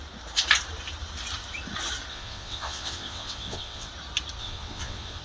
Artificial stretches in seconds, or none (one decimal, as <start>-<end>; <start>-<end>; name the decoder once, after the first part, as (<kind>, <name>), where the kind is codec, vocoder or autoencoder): 2.1-3.9 (vocoder, WaveNeXt); 4.4-5.2